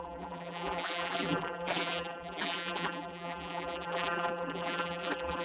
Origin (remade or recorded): remade